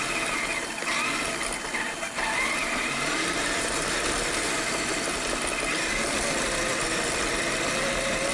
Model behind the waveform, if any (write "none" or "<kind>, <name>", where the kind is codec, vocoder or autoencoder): none